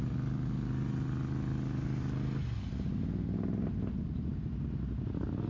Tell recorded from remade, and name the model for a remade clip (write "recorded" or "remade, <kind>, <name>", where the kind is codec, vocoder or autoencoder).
recorded